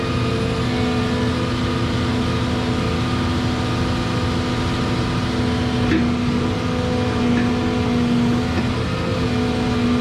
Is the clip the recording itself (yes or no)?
yes